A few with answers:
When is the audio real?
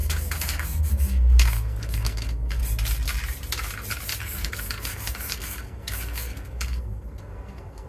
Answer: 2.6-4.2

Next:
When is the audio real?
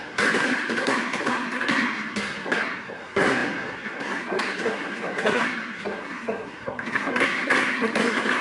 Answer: none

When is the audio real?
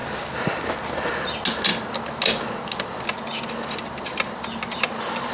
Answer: 0.0-5.3